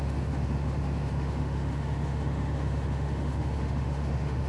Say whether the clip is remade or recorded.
remade